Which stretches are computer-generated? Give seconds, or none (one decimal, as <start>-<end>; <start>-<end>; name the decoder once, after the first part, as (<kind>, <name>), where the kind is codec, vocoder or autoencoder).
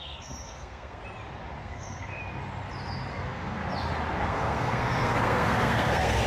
0.0-1.0 (codec, SNAC); 1.6-2.2; 3.1-3.6; 4.2-6.3